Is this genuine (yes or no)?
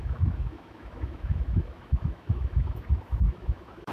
no